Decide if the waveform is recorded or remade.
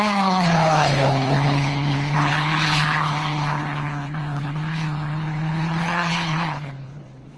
remade